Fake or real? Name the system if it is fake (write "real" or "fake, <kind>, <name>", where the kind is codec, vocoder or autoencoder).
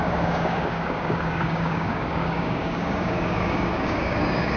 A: fake, codec, DAC